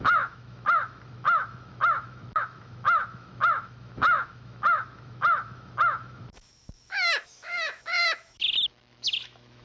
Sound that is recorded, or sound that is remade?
remade